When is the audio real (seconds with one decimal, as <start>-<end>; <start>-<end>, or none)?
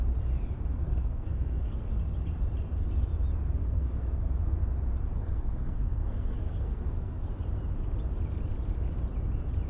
0.0-0.7; 2.0-3.6; 4.4-5.1; 7.3-9.7